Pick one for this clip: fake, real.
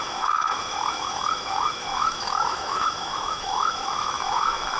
fake